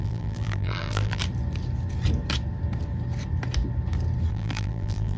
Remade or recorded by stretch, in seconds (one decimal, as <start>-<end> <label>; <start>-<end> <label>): 0.0-1.2 remade; 1.2-4.3 recorded; 4.3-5.2 remade